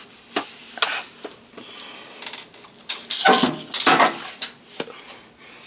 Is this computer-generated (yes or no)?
no